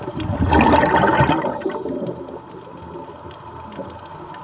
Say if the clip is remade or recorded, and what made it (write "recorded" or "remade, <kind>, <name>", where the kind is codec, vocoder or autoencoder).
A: recorded